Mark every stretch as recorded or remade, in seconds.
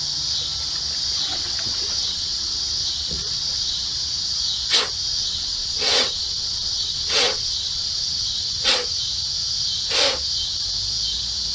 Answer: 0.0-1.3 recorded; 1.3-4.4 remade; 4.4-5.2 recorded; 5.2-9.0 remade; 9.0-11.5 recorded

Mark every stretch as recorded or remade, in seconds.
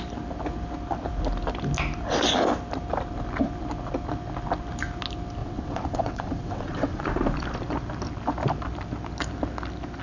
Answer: 0.0-5.4 recorded; 5.4-7.0 remade; 7.0-10.0 recorded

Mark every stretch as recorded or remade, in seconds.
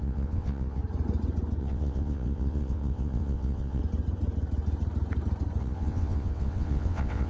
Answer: 0.0-0.8 remade; 0.8-1.6 recorded; 1.6-3.8 remade; 3.8-5.6 recorded; 5.6-7.3 remade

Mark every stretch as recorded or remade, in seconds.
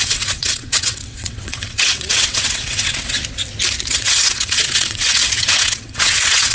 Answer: 0.0-3.2 remade; 3.2-3.9 recorded; 3.9-6.5 remade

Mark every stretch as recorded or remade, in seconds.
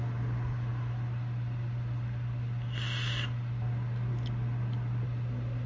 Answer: 0.0-5.7 recorded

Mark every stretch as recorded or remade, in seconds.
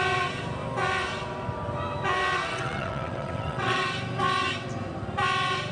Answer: 0.0-2.5 recorded; 2.5-3.8 remade; 3.8-5.7 recorded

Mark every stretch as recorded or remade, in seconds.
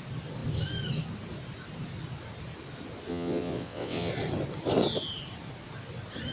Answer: 0.0-3.1 recorded; 3.1-4.1 remade; 4.1-6.3 recorded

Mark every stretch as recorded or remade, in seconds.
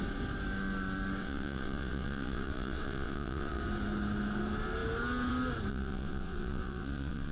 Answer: 0.0-1.2 recorded; 1.2-3.6 remade; 3.6-5.7 recorded; 5.7-7.3 remade